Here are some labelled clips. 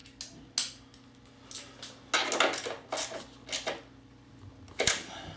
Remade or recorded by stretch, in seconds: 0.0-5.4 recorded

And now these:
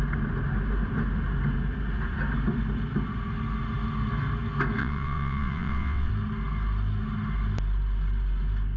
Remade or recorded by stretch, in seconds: 0.0-4.8 recorded; 4.8-6.1 remade; 6.1-8.8 recorded

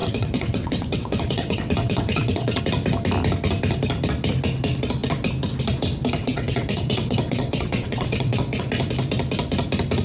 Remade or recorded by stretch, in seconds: 0.0-2.6 remade; 2.6-6.2 recorded; 6.2-8.6 remade; 8.6-10.0 recorded

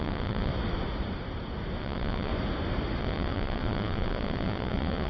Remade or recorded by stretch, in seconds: 0.0-0.5 remade; 0.5-1.8 recorded; 1.8-2.3 remade; 2.3-3.0 recorded; 3.0-5.1 remade

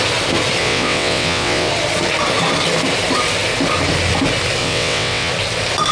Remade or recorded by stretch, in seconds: 0.0-0.6 recorded; 0.6-1.7 remade; 1.7-4.6 recorded; 4.6-5.3 remade; 5.3-5.9 recorded

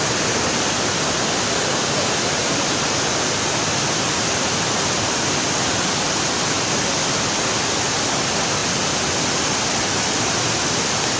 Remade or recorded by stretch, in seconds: 0.0-11.2 recorded

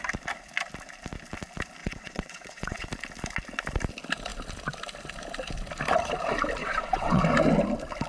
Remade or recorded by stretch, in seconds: 0.0-1.8 recorded; 1.8-2.9 remade; 2.9-6.6 recorded; 6.6-7.2 remade; 7.2-8.1 recorded